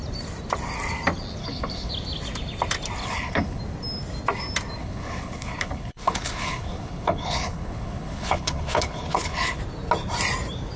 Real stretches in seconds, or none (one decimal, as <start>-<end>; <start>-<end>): 0.0-1.4; 1.9-3.0; 3.6-4.8; 9.6-10.8